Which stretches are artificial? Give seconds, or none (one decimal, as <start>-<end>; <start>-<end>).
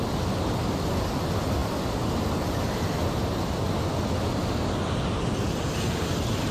none